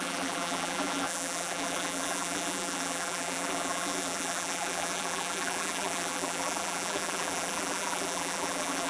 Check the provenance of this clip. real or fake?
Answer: fake